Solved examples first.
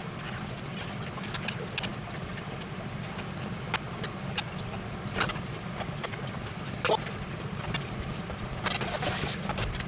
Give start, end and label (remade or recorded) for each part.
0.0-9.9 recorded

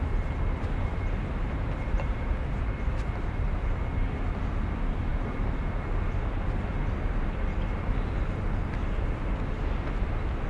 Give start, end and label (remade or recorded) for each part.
0.0-10.5 recorded

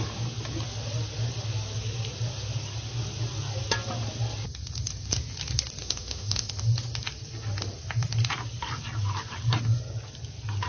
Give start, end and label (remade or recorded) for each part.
0.0-5.8 recorded; 5.8-6.5 remade; 6.5-10.7 recorded

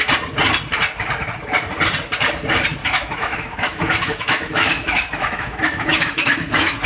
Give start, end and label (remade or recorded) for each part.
0.0-2.8 recorded; 2.8-6.9 remade

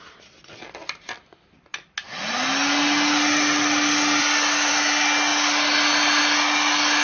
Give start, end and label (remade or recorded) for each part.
0.0-7.0 recorded